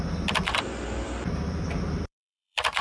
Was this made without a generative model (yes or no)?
no